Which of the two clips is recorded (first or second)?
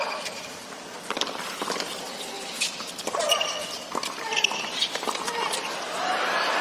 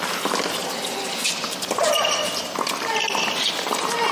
second